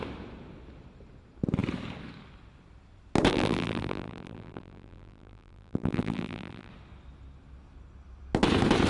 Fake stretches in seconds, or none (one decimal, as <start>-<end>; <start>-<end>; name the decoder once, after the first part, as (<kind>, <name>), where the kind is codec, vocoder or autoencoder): 3.3-6.7 (vocoder, BigVGAN v2)